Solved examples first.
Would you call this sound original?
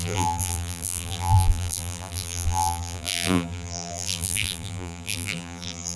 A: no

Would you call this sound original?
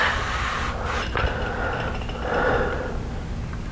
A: yes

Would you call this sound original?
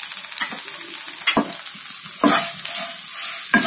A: yes